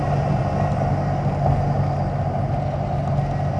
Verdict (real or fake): real